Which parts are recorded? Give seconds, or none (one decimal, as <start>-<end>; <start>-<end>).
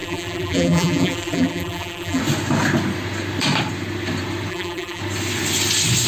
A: 2.2-4.5; 5.0-6.1